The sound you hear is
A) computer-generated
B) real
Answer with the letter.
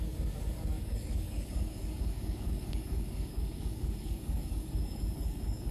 A